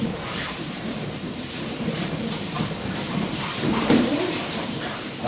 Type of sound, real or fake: fake